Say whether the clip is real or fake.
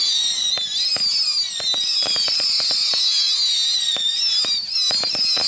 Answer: real